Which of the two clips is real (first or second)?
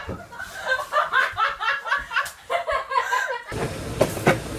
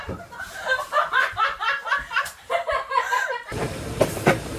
first